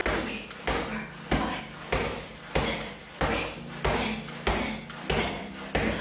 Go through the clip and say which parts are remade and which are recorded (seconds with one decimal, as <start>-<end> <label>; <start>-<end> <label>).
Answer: 0.0-6.0 recorded